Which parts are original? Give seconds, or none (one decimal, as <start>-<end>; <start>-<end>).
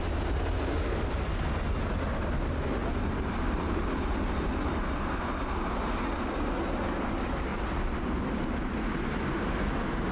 0.0-2.8; 4.0-7.5; 8.2-10.1